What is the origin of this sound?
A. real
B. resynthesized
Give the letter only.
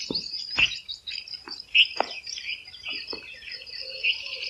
B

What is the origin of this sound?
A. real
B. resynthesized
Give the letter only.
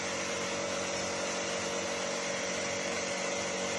A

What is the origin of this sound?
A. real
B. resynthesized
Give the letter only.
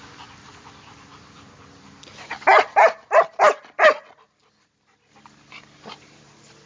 A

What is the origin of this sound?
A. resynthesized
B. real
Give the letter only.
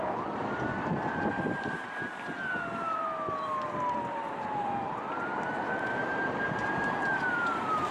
A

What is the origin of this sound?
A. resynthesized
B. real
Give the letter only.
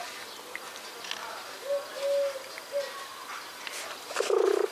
B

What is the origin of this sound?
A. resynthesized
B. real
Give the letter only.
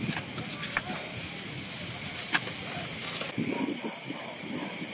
B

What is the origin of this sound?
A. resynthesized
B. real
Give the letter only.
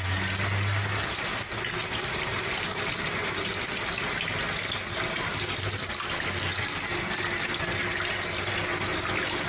B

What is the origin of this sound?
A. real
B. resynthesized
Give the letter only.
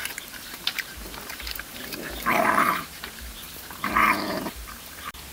B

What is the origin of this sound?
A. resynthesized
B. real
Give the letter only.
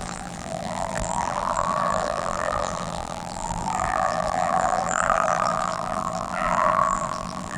A